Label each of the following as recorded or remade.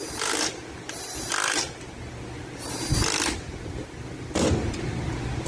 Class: recorded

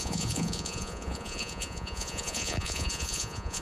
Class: remade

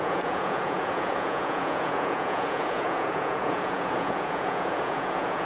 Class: remade